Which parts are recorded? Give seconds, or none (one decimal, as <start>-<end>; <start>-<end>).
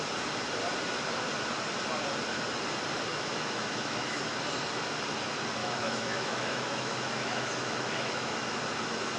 0.0-3.1; 4.2-5.6; 8.6-9.2